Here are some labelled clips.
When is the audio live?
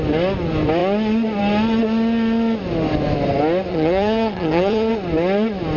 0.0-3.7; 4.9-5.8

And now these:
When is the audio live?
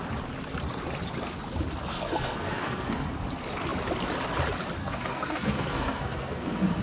0.0-1.9; 3.1-4.8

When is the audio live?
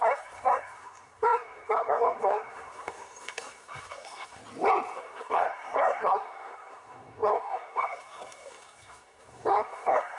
4.4-5.0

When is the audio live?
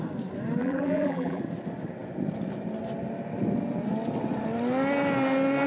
0.0-0.6; 1.4-5.7